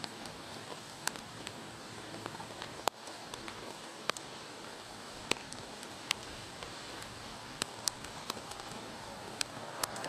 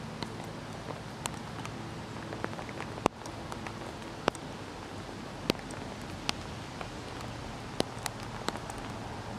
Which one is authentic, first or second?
second